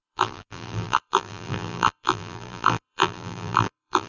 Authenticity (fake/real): fake